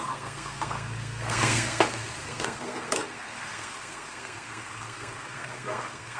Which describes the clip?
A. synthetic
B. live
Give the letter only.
A